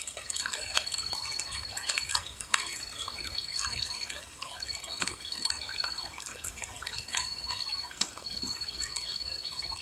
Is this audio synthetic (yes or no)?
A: yes